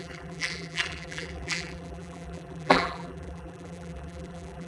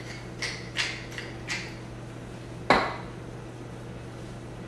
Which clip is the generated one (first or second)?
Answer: first